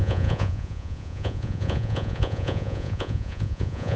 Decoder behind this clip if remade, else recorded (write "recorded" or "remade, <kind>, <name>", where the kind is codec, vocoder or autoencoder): remade, vocoder, Vocos